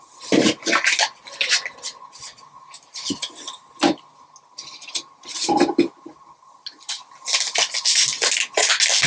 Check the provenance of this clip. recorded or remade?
recorded